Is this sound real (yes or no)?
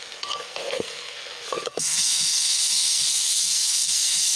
no